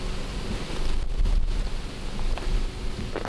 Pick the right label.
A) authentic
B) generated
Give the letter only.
A